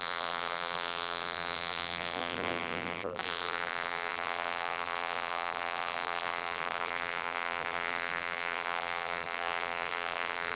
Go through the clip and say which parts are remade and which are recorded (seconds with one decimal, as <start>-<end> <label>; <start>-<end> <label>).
0.0-10.6 remade